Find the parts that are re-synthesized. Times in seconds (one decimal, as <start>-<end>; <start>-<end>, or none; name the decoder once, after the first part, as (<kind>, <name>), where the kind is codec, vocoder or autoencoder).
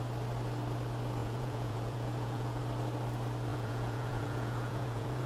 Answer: 1.2-2.6 (vocoder, Vocos); 3.5-5.3